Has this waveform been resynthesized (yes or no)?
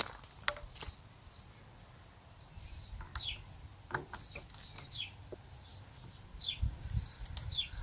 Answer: no